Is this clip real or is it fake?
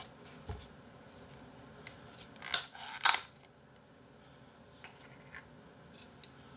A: real